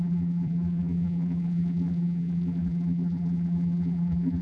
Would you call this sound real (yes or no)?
no